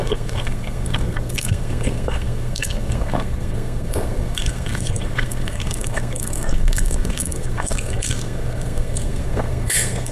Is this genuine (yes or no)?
no